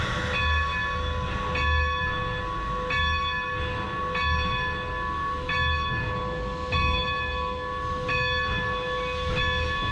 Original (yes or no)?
yes